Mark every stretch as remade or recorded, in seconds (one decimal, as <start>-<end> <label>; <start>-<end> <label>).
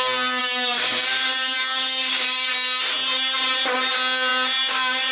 0.0-0.4 recorded; 0.4-2.5 remade; 2.5-5.1 recorded